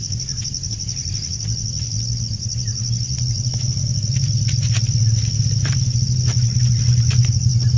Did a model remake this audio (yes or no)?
no